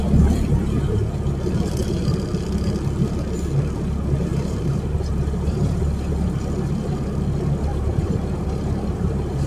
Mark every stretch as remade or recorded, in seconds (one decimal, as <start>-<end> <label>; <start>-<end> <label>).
0.0-4.3 recorded; 4.3-5.8 remade; 5.8-7.7 recorded; 7.7-9.5 remade